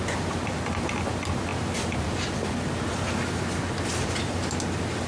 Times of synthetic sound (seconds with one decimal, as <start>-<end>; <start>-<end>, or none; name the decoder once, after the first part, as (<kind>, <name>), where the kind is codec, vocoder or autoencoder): none